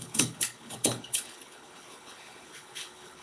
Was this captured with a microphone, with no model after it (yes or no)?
no